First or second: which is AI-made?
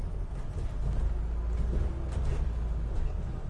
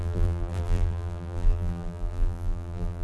second